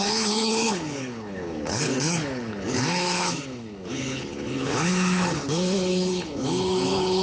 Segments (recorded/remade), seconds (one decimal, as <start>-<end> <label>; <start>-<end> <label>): 0.0-7.2 remade

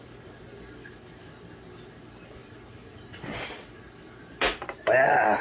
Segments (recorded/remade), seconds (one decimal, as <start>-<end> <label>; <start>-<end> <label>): 0.0-5.4 recorded

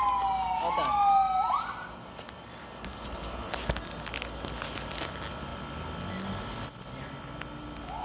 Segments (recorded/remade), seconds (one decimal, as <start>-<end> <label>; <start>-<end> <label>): 0.0-8.0 recorded